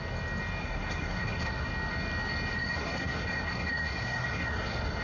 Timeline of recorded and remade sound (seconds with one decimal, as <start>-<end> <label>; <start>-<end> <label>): 0.0-0.6 recorded; 0.6-1.7 remade; 1.7-2.5 recorded; 2.5-5.0 remade